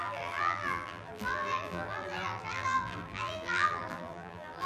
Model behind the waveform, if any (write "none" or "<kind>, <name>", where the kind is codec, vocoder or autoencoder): vocoder, BigVGAN v2